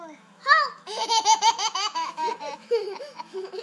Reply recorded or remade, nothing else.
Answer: remade